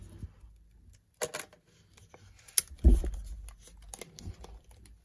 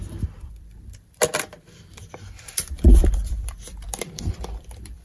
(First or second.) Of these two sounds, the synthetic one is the second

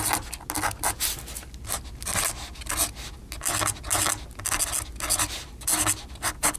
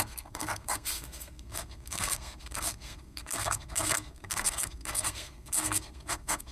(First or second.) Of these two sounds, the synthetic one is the second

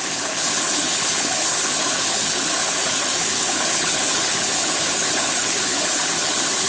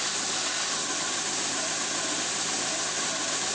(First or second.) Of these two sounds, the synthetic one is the first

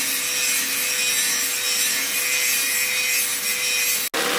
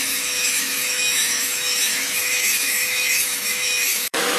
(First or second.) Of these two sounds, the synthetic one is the second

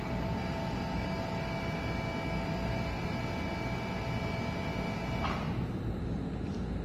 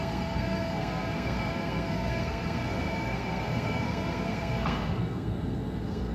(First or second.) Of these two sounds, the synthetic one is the second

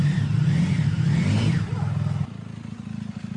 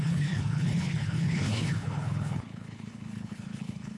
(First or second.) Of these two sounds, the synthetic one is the second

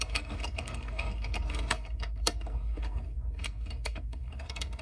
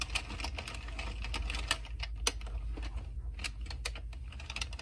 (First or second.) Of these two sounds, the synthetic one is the first